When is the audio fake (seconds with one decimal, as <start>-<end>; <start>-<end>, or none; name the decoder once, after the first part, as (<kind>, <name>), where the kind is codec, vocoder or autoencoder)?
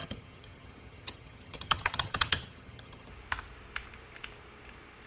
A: 0.0-3.1 (vocoder, HiFi-GAN)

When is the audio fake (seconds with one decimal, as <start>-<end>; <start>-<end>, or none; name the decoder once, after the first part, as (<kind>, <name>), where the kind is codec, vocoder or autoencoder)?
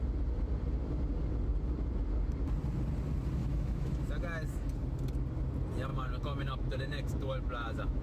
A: 3.4-4.0 (autoencoder, DAC-VAE); 5.9-8.0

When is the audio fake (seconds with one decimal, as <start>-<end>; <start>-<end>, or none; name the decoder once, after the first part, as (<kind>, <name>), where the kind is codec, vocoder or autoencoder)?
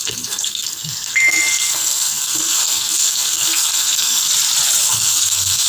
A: 0.0-4.3 (codec, SNAC); 4.8-5.7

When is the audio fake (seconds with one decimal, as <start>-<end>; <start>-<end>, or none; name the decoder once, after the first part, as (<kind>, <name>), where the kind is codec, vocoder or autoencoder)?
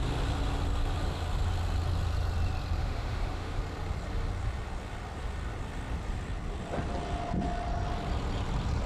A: 2.8-3.6 (autoencoder, DAC-VAE)